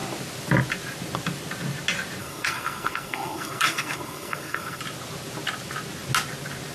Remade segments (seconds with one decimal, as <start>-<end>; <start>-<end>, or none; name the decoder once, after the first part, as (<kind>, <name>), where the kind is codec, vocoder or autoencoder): 2.2-4.8 (codec, SNAC)